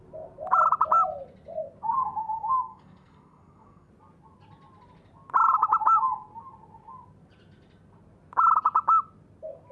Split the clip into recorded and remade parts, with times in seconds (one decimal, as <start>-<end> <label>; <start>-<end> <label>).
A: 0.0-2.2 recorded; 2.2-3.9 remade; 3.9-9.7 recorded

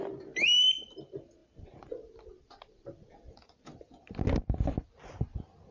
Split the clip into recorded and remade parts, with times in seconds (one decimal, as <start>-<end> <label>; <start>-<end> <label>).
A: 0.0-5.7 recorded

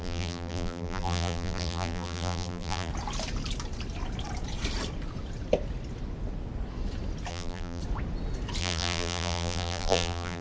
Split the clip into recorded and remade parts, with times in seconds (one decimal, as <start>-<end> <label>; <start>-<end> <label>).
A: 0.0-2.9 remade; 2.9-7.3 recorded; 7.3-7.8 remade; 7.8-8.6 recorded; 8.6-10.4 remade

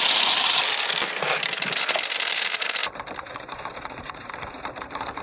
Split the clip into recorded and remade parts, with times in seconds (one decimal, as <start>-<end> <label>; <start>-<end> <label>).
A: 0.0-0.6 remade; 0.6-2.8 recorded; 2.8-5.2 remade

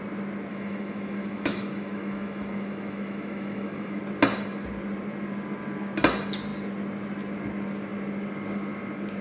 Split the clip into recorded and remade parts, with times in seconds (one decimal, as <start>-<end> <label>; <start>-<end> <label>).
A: 0.0-0.5 recorded; 0.5-4.0 remade; 4.0-9.2 recorded